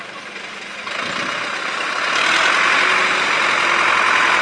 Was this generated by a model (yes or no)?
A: no